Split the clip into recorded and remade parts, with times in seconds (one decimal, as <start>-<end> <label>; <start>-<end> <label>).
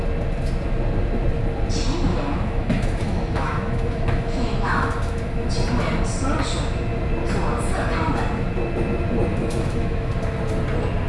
0.0-2.1 recorded; 2.1-5.5 remade; 5.5-9.3 recorded; 9.3-10.1 remade; 10.1-11.1 recorded